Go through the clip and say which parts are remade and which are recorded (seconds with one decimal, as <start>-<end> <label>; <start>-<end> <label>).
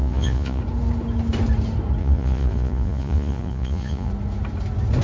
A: 0.0-0.6 remade; 0.6-2.0 recorded; 2.0-4.1 remade; 4.1-5.0 recorded